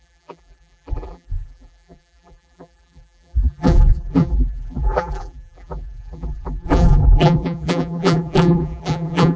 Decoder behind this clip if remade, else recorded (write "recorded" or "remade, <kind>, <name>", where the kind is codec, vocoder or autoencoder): remade, vocoder, BigVGAN v2